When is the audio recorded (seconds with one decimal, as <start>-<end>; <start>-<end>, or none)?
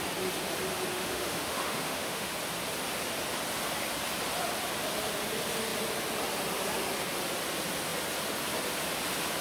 0.0-0.9; 2.3-9.4